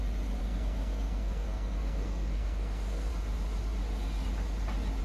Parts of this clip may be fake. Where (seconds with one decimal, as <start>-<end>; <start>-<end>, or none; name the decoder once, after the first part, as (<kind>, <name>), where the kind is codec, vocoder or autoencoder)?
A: 0.4-3.1 (codec, SNAC)